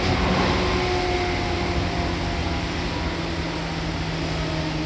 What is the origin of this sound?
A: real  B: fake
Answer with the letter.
A